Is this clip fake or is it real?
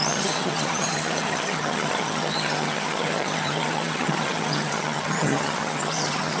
fake